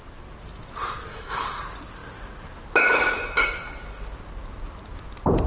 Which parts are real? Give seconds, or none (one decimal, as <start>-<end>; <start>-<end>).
0.0-1.1; 1.6-5.5